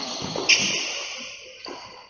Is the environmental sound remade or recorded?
recorded